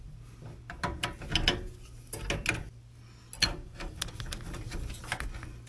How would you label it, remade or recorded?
recorded